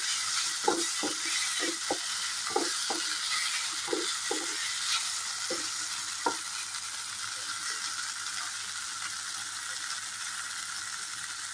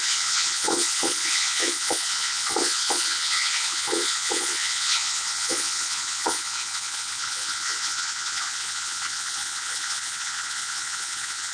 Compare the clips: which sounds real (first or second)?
first